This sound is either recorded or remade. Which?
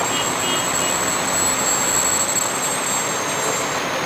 recorded